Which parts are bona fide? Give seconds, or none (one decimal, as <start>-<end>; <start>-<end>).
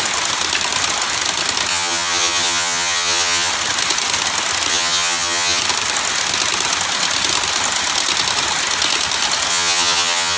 0.0-1.7; 3.5-4.7; 5.6-9.5